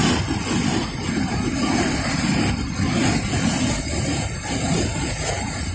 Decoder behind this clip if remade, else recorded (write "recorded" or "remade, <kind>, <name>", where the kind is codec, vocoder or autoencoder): recorded